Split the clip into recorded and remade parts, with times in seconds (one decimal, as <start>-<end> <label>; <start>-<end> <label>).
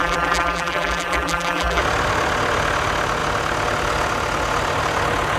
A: 0.0-1.8 remade; 1.8-5.4 recorded